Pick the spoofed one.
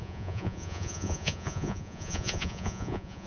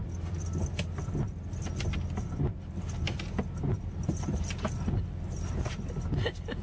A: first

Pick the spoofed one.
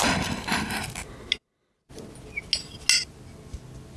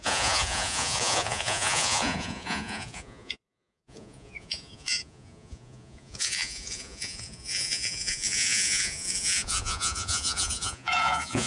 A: second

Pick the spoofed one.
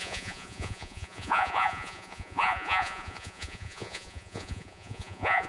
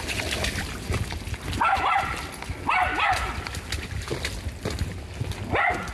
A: first